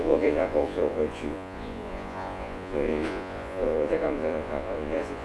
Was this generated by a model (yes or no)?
yes